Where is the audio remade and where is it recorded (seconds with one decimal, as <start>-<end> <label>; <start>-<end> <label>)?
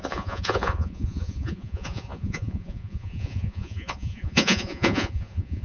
0.0-5.6 remade